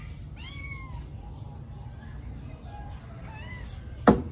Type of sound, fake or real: real